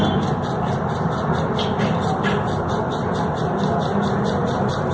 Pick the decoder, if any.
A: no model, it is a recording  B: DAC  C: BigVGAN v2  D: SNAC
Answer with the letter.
A